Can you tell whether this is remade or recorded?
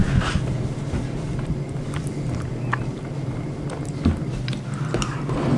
recorded